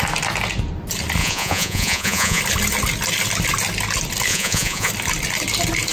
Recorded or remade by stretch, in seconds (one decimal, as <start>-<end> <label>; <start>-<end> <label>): 0.0-1.2 recorded; 1.2-2.4 remade; 2.4-4.3 recorded; 4.3-4.9 remade; 4.9-5.9 recorded